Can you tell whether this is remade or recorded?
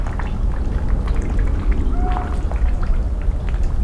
recorded